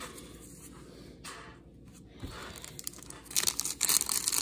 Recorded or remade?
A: recorded